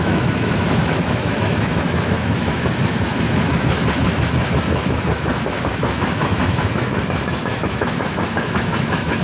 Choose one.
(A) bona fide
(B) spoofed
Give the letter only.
B